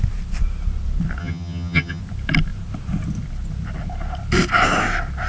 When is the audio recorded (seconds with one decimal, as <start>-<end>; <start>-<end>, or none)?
0.0-1.2; 2.0-5.3